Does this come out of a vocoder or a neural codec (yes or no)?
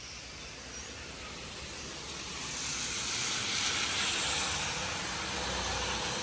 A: no